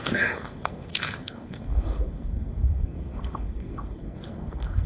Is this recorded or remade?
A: remade